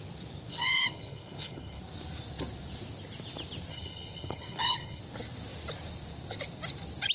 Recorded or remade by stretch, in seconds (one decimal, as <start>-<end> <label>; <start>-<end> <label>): 0.0-0.5 recorded; 0.5-1.8 remade; 1.8-3.7 recorded; 3.7-5.0 remade; 5.0-7.1 recorded